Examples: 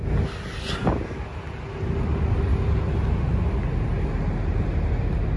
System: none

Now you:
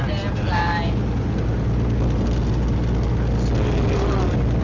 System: none